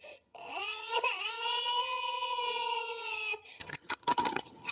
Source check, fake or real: fake